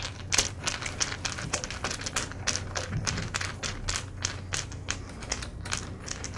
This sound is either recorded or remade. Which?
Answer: recorded